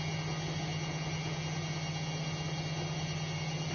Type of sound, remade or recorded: recorded